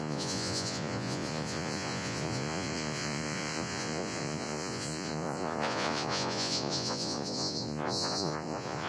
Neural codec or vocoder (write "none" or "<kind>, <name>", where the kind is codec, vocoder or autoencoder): vocoder, Vocos